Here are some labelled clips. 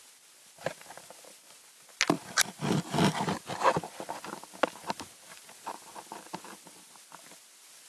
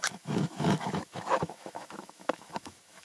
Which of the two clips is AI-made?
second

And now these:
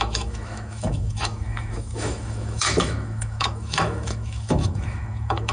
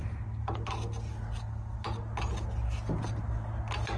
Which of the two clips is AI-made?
first